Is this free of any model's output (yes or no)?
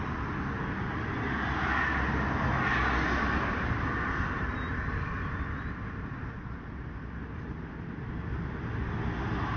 yes